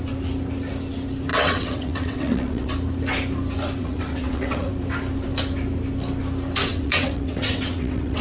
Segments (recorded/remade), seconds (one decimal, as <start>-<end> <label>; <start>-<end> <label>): 0.0-1.3 recorded; 1.3-2.7 remade; 2.7-3.8 recorded; 3.8-4.7 remade; 4.7-6.7 recorded; 6.7-8.2 remade